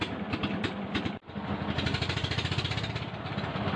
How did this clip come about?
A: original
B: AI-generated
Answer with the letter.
A